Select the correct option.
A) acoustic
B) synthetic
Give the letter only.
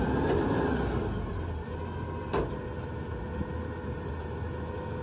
A